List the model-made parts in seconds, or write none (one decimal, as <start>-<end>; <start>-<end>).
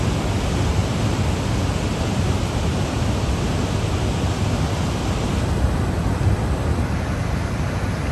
none